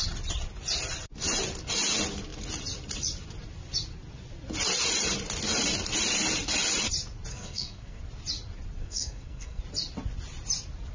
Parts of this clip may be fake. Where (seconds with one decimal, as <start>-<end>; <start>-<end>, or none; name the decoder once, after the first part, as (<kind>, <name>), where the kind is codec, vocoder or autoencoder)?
7.3-8.0 (codec, SNAC); 8.8-9.6